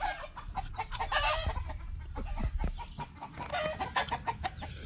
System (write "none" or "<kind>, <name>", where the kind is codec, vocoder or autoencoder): none